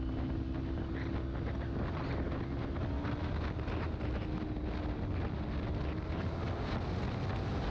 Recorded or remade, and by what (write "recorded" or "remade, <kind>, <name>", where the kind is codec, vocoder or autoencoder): recorded